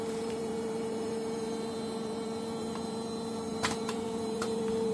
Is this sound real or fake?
fake